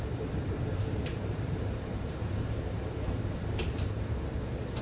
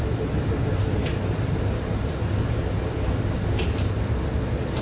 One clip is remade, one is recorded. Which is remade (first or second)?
first